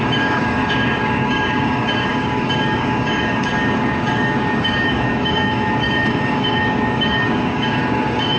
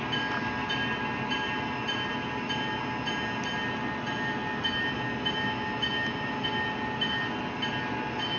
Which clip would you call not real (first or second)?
first